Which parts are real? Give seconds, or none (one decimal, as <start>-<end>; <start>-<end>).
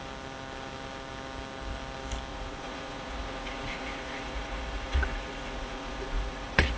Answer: 0.0-2.3